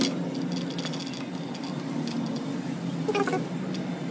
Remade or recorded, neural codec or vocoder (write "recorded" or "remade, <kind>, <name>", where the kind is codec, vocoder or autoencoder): recorded